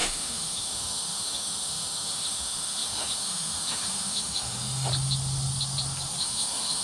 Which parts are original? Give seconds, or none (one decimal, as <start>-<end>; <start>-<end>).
4.9-6.2